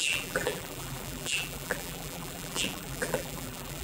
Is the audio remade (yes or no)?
yes